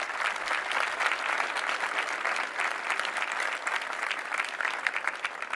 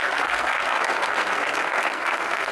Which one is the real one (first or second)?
first